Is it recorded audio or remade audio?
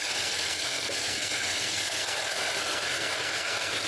remade